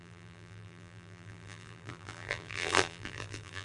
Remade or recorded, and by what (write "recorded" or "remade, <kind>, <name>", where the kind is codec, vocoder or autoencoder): remade, vocoder, BigVGAN v2